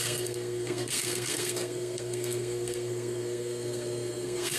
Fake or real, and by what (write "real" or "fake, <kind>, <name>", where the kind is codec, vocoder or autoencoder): fake, codec, SNAC